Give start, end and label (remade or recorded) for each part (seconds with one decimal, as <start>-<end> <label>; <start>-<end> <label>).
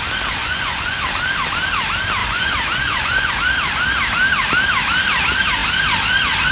0.0-0.4 recorded; 0.4-1.0 remade; 1.0-2.2 recorded; 2.2-3.3 remade; 3.3-6.5 recorded